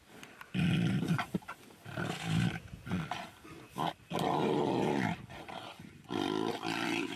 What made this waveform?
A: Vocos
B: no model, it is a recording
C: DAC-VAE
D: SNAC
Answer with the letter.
B